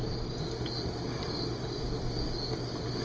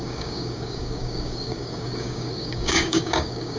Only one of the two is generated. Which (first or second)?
second